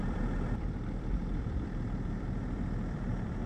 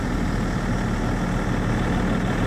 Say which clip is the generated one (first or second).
first